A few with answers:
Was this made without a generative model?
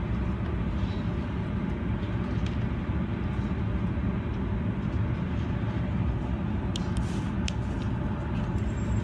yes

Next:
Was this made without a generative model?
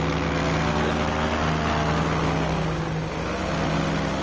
yes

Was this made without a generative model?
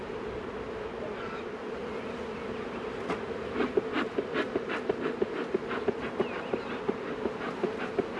yes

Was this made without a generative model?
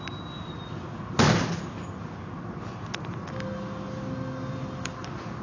yes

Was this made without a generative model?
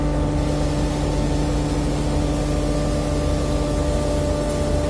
yes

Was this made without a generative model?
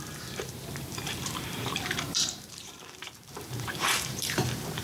no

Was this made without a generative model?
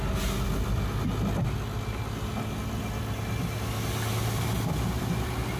yes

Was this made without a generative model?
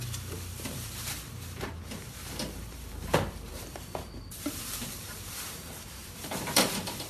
no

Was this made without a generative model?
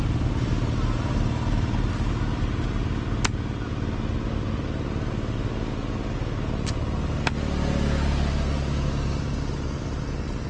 yes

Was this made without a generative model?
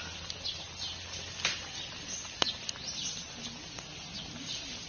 yes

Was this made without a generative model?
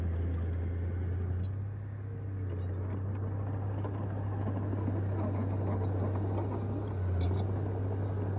yes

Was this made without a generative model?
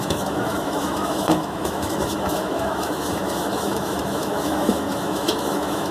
no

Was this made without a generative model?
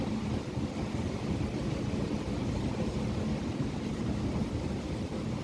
yes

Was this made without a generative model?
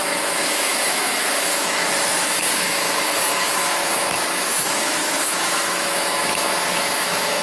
no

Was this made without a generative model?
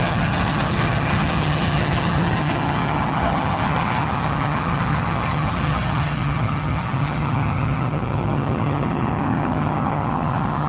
no